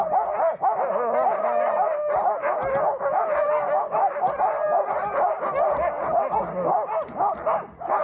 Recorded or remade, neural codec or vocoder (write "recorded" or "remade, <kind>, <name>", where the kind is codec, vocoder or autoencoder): recorded